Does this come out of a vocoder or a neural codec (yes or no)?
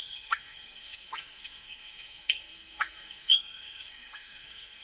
yes